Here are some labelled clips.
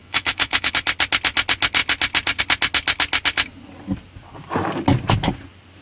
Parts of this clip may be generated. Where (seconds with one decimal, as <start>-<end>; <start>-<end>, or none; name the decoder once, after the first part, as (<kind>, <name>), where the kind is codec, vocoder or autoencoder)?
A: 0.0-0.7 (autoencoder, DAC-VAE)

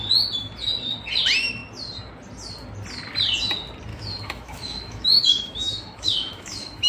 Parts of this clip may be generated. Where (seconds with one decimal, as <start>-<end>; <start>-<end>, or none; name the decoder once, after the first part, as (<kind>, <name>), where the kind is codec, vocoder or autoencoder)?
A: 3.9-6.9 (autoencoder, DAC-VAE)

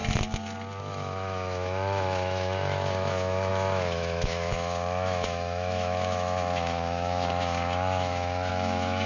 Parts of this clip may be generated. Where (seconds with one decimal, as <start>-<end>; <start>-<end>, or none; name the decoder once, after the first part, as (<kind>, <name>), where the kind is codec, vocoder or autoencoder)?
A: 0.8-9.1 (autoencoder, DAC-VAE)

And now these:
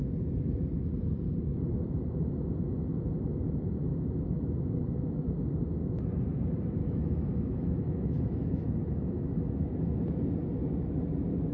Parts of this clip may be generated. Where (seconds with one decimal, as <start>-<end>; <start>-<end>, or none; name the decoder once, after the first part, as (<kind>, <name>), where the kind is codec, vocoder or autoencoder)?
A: 6.8-10.2 (autoencoder, DAC-VAE)

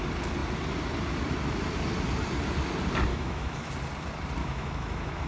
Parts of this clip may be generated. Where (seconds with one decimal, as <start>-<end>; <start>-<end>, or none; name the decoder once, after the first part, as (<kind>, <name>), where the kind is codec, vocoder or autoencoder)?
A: 3.1-3.7 (autoencoder, DAC-VAE); 4.4-5.3